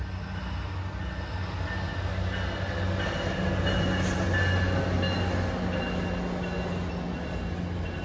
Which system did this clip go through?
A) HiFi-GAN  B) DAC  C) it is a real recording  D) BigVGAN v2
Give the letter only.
C